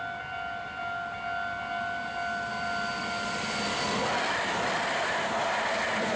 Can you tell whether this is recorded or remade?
recorded